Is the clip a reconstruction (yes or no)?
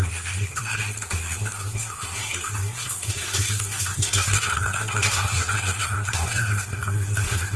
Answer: yes